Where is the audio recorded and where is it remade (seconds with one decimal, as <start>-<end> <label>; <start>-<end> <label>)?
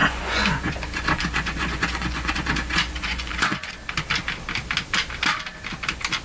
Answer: 0.0-3.7 remade; 3.7-6.2 recorded